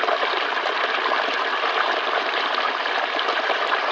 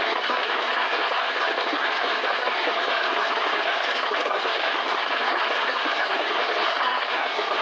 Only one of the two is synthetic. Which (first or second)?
second